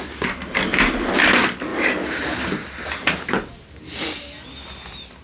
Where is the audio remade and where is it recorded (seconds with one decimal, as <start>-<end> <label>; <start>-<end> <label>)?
0.0-5.2 recorded